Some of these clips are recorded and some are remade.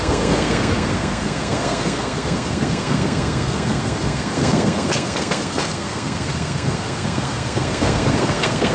remade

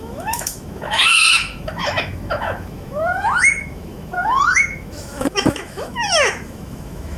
remade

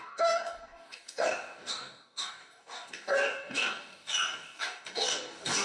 remade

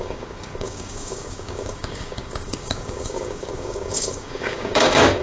remade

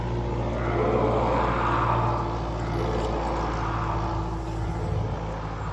recorded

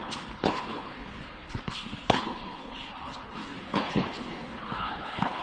remade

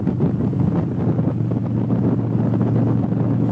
recorded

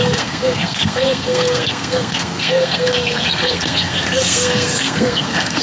remade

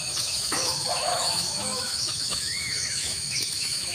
remade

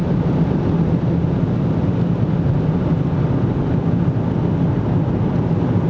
recorded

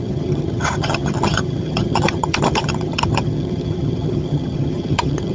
remade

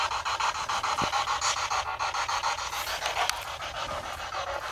recorded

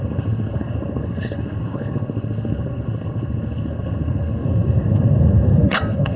remade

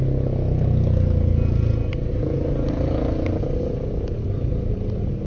recorded